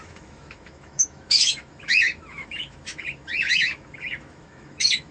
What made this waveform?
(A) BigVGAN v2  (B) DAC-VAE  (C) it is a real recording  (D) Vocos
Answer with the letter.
B